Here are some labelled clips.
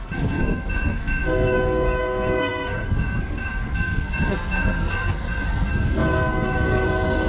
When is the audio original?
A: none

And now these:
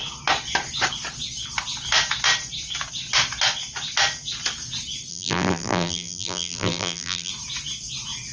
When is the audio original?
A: 0.0-5.1; 7.3-8.3